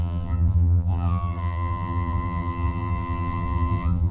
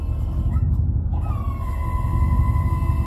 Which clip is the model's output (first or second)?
first